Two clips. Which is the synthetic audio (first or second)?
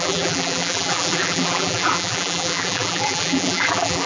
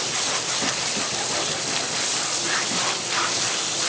first